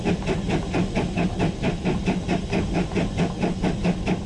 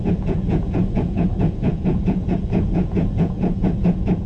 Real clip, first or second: first